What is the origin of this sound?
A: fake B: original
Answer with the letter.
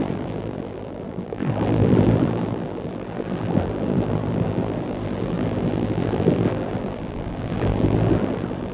A